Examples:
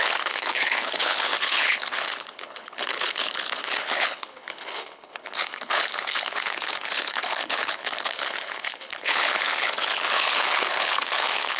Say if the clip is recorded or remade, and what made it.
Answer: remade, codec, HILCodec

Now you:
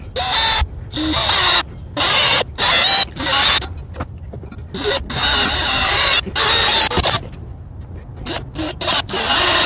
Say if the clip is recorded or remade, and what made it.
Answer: recorded